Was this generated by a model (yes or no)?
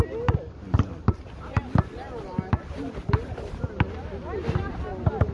no